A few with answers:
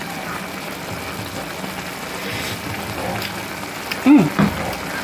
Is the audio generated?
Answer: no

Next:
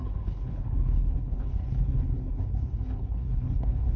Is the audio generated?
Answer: yes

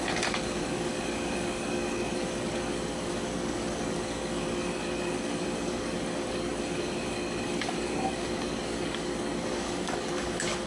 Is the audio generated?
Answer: yes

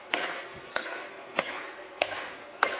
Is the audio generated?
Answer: yes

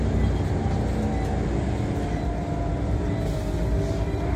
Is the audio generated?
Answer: no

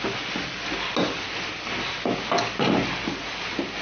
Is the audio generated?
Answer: no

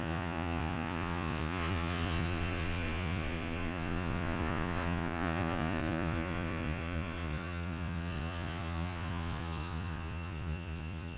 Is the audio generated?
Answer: yes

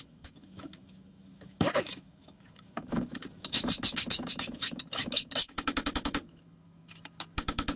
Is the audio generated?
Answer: yes